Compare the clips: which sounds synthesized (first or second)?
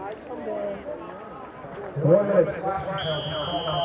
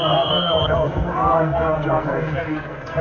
second